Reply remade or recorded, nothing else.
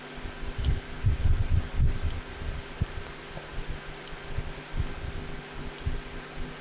recorded